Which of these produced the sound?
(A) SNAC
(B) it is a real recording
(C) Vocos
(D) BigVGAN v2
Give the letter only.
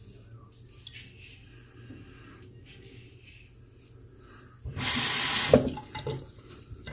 B